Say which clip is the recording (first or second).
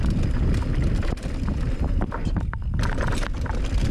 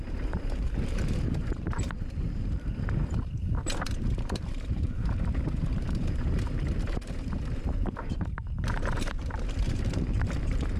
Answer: first